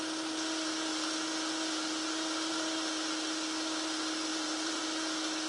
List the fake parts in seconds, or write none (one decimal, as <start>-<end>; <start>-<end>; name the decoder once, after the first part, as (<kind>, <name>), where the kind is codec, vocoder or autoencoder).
4.3-4.8 (vocoder, BigVGAN v2)